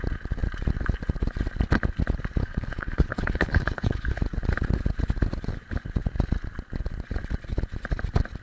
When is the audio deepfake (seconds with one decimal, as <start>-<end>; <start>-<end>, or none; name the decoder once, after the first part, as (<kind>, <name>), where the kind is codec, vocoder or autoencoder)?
2.4-4.2 (codec, HILCodec)